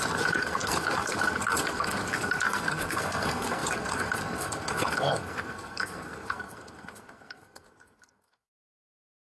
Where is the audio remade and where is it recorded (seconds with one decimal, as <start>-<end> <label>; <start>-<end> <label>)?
0.0-9.3 remade